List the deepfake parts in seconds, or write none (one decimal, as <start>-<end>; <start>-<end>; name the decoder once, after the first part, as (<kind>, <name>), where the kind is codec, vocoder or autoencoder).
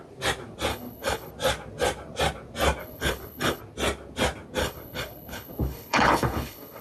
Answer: 0.7-1.3 (codec, HILCodec); 2.8-3.6; 4.6-6.8